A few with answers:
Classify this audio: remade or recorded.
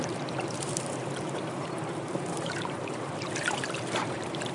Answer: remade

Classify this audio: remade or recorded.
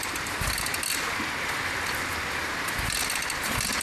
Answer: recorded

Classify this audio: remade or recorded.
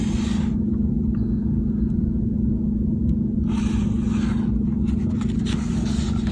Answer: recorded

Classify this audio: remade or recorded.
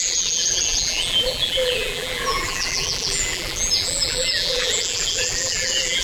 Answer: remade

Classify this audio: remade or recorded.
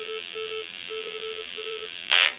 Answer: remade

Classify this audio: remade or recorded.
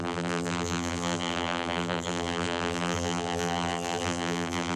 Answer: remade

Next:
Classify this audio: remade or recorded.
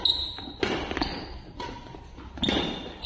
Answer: recorded